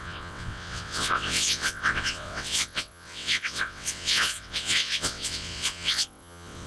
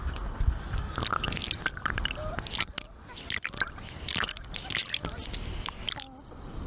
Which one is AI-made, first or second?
first